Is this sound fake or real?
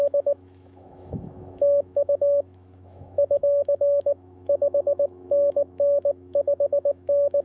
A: fake